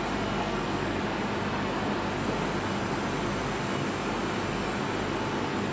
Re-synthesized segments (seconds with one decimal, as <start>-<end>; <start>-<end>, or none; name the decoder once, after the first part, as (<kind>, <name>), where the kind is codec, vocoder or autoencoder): 0.4-1.0 (codec, SNAC)